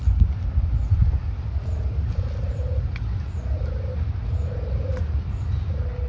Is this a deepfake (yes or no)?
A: no